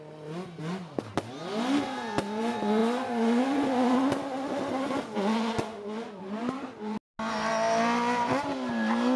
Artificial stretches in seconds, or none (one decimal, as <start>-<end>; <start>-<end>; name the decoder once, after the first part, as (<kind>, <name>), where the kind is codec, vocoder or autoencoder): none